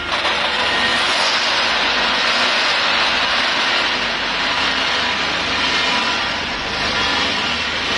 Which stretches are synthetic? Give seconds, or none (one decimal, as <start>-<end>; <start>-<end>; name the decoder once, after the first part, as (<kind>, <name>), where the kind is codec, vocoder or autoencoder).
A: 0.9-3.3 (vocoder, Vocos); 6.0-6.7